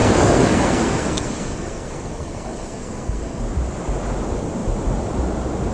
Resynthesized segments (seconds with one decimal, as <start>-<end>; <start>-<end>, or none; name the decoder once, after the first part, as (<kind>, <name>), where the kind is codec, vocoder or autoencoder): 0.0-3.4 (codec, SNAC)